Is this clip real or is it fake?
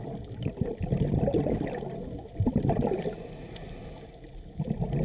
real